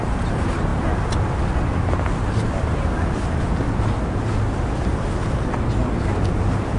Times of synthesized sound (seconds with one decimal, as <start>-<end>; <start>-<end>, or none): none